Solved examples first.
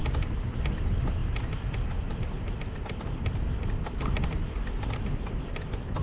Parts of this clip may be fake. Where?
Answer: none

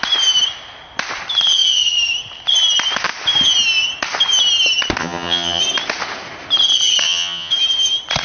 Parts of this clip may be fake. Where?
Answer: 5.0-5.6 (vocoder, HiFi-GAN); 7.0-7.5